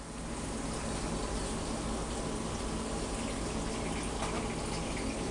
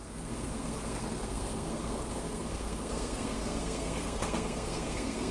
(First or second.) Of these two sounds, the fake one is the second